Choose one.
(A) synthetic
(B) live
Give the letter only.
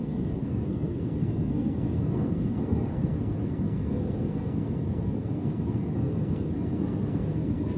A